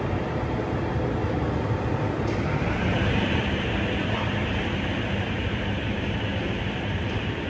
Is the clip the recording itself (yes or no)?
no